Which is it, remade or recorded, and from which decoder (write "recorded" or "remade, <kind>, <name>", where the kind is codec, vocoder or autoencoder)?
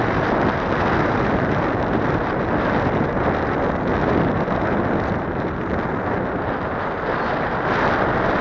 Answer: recorded